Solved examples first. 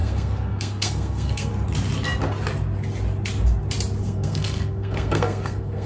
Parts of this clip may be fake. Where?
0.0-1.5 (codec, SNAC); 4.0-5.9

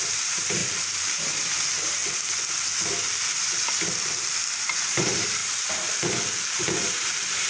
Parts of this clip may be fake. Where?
0.0-2.0 (vocoder, BigVGAN v2); 4.6-5.4; 6.5-7.5

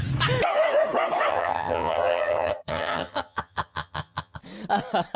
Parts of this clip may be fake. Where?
1.3-4.4 (vocoder, HiFi-GAN)

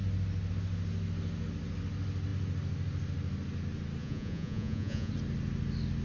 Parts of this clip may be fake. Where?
4.0-5.1 (vocoder, Vocos)

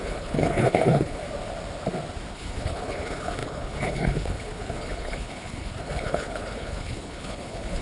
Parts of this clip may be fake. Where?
0.0-1.2 (codec, HILCodec); 2.3-7.8